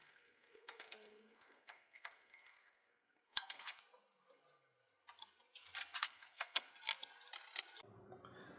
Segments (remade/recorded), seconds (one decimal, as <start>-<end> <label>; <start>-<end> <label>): 0.0-3.8 remade; 3.8-6.0 recorded; 6.0-6.7 remade; 6.7-8.6 recorded